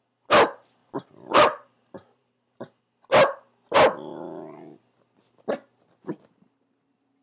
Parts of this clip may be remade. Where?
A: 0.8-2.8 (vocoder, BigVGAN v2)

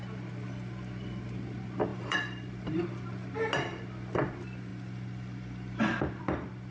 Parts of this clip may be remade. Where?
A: 1.9-2.8 (vocoder, BigVGAN v2); 4.7-6.2